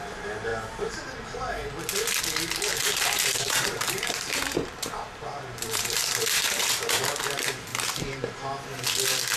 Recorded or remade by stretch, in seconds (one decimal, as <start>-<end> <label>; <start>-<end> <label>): 0.0-2.7 recorded; 2.7-6.9 remade; 6.9-7.7 recorded; 7.7-8.2 remade; 8.2-9.4 recorded